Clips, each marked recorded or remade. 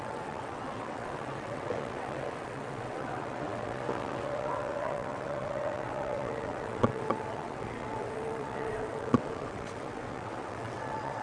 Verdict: remade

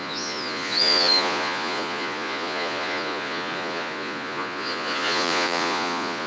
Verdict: remade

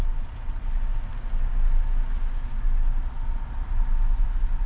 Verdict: recorded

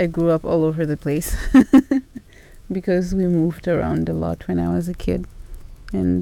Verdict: remade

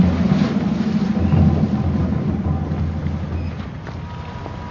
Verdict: recorded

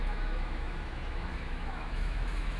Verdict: remade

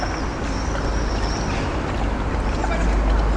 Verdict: recorded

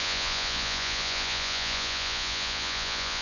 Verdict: remade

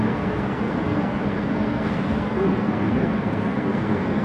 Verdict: remade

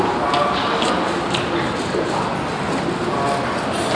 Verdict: recorded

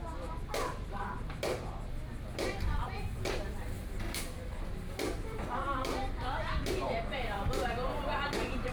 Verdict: remade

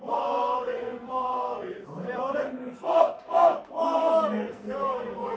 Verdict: remade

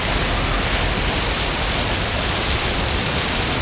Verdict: recorded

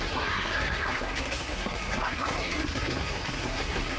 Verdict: remade